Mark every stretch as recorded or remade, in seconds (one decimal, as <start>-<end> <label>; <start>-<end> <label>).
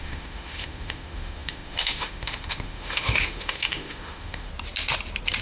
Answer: 0.0-4.5 remade; 4.5-5.4 recorded